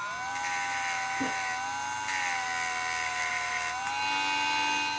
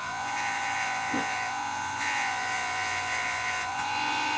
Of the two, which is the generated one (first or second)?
second